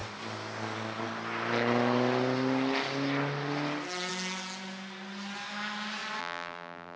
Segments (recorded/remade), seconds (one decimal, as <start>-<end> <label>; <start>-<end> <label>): 0.0-6.2 recorded; 6.2-7.0 remade